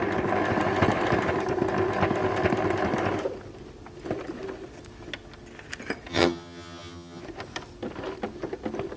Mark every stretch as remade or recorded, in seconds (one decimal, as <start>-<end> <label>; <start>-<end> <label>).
0.0-6.1 recorded; 6.1-7.2 remade; 7.2-9.0 recorded